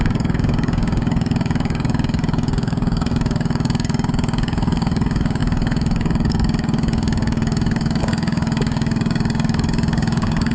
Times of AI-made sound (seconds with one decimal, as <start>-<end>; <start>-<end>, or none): 0.0-10.5